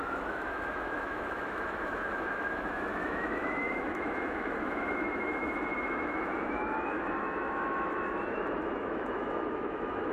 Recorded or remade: remade